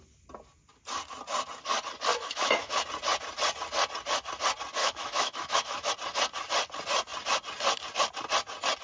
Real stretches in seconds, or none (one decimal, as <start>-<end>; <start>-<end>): 0.0-2.1; 2.8-4.8; 5.9-8.8